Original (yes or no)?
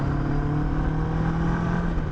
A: yes